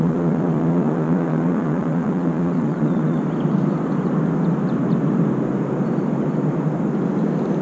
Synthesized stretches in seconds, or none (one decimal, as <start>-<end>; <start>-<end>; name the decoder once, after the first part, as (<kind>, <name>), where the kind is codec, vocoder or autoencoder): 0.0-3.2 (vocoder, Vocos)